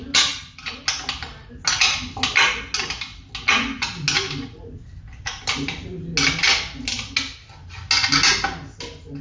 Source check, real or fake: real